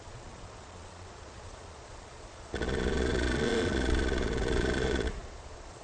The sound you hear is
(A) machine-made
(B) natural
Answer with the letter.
A